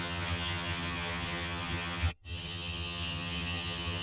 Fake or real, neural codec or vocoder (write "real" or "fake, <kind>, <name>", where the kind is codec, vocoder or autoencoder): fake, vocoder, HiFi-GAN